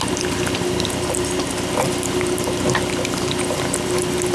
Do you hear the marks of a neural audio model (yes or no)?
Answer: no